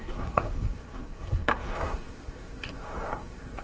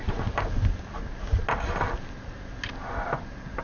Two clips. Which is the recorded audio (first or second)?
second